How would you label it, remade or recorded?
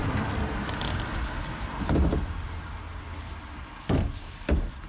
recorded